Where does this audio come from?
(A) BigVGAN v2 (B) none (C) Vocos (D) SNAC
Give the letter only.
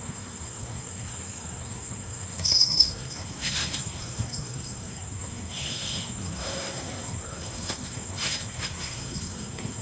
D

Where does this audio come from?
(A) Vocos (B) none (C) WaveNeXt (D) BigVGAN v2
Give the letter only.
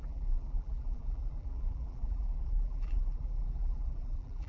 D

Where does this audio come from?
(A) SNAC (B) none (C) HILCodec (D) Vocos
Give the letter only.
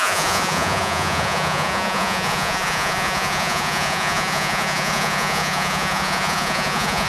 D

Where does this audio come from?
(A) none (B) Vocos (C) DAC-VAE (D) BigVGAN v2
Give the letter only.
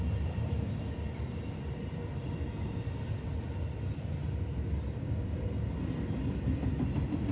A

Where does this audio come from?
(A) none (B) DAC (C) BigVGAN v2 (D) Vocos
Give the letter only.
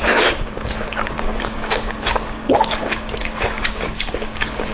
B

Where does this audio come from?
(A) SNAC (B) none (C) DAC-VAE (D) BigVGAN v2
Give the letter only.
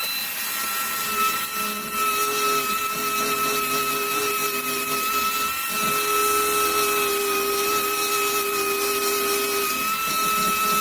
B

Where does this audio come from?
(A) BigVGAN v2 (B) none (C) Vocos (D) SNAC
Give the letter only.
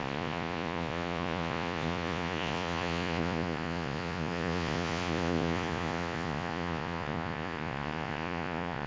C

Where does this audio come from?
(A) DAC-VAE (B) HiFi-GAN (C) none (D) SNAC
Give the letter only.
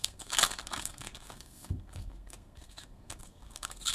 D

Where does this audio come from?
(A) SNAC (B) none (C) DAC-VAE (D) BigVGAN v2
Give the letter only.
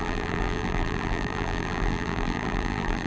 D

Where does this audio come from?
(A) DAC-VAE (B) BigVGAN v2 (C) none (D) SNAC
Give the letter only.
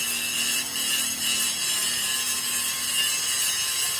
C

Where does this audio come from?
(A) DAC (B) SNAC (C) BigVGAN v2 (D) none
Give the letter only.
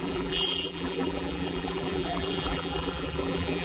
C